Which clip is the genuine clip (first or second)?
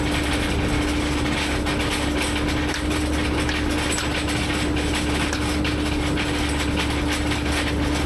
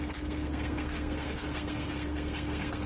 first